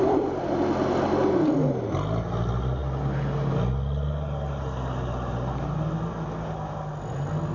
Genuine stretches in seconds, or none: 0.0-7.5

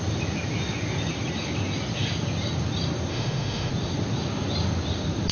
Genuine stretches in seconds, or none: 0.0-3.1; 3.7-5.3

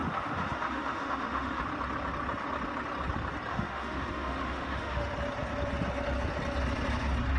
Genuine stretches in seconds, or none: 1.6-3.5; 5.1-7.4

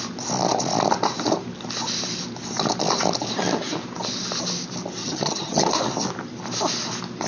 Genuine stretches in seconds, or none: 0.0-5.0; 5.7-7.3

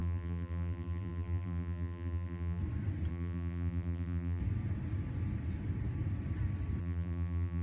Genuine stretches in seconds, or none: 2.6-3.1; 4.4-6.8